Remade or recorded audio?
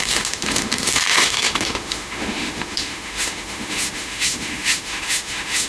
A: remade